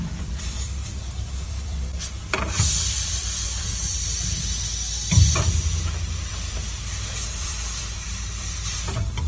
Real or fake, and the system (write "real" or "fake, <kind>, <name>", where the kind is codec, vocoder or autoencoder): fake, vocoder, BigVGAN v2